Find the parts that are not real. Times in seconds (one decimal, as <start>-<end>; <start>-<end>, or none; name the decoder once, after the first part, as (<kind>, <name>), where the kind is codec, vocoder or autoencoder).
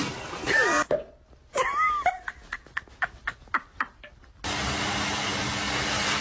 none